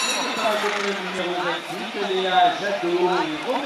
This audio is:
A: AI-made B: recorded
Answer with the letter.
A